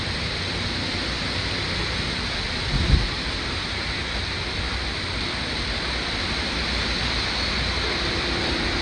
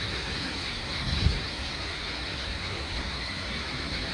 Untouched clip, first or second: first